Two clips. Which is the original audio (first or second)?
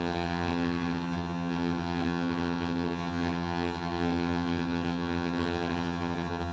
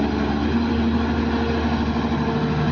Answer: second